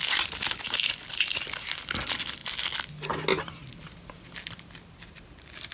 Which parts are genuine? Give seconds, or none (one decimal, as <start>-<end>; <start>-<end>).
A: 0.0-5.7